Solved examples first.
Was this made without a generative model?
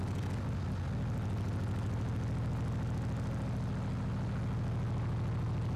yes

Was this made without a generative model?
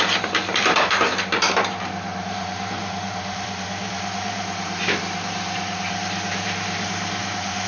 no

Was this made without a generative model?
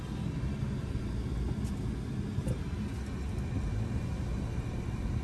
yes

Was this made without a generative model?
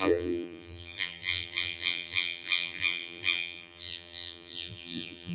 no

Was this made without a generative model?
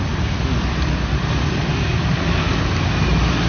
yes